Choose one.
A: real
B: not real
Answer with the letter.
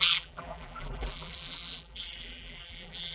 B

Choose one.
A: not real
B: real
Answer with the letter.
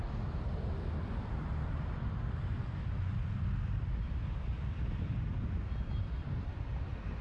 A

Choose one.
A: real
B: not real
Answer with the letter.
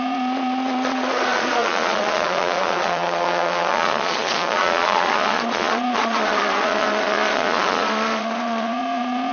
B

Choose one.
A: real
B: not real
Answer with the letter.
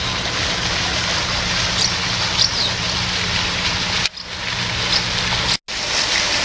A